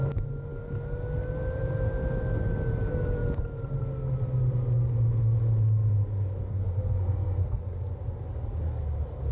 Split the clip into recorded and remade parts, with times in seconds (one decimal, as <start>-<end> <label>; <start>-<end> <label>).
0.0-6.5 recorded; 6.5-7.6 remade; 7.6-9.3 recorded